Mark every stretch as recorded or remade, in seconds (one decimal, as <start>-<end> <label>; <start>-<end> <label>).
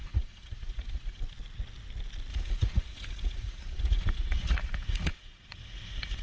0.0-1.2 remade; 1.2-2.3 recorded; 2.3-6.2 remade